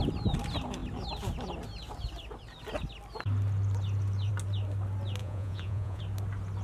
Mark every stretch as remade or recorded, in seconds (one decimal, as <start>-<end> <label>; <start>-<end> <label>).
0.0-5.2 recorded; 5.2-6.0 remade; 6.0-6.6 recorded